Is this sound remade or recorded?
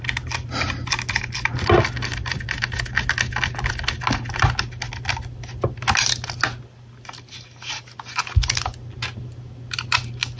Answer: recorded